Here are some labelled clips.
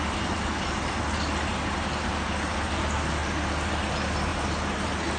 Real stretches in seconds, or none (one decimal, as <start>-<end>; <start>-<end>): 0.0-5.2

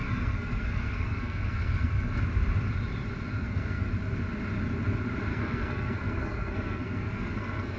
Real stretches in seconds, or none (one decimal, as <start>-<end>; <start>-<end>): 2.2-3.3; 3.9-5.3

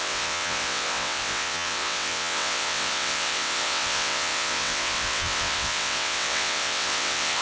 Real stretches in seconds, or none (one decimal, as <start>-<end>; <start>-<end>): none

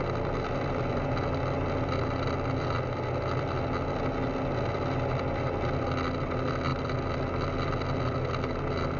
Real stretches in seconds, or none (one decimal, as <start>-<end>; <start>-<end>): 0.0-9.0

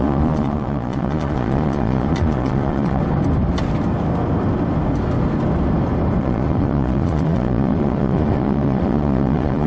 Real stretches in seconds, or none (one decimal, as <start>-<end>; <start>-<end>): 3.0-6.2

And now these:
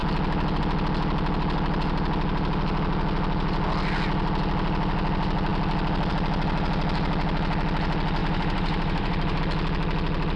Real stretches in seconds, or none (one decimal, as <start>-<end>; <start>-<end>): 0.0-8.2; 9.4-10.4

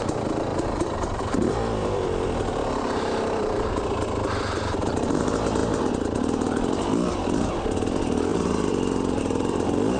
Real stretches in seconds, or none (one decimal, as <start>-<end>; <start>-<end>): 0.0-0.5; 5.1-5.6; 7.5-8.3; 9.2-10.0